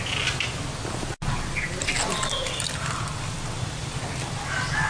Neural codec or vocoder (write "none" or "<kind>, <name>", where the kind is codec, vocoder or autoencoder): none